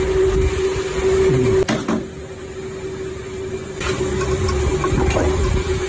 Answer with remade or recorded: recorded